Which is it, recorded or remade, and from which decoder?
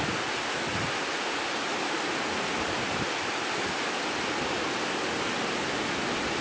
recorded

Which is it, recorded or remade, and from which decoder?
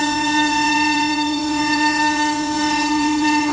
remade, vocoder, WaveNeXt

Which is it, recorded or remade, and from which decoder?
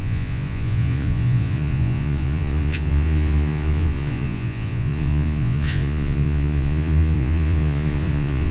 remade, vocoder, Vocos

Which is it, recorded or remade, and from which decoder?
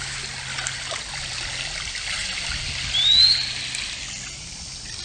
recorded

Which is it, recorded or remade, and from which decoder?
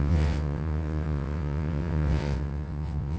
remade, vocoder, WaveNeXt